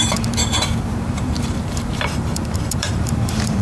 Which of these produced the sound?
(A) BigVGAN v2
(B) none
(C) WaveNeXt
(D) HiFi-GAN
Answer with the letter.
A